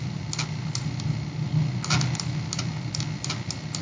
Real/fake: real